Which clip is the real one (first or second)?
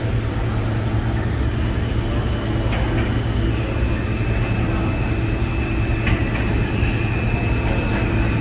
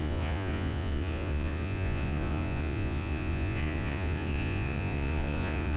first